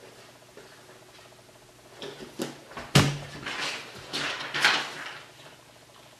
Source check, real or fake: real